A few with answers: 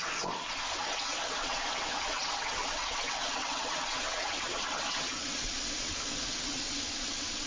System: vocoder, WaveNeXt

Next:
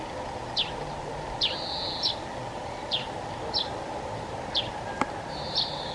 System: none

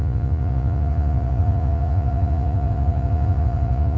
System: vocoder, Vocos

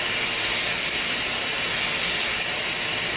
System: none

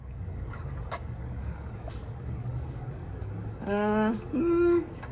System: codec, DAC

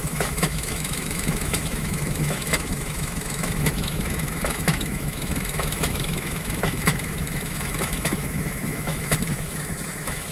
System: autoencoder, DAC-VAE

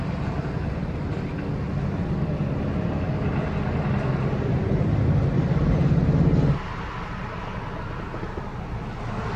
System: none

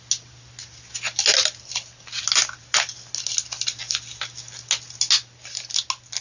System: none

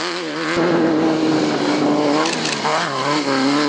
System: none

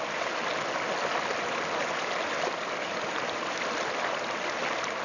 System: none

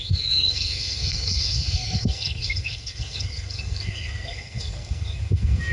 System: codec, SNAC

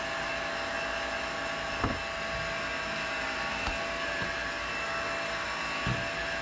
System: none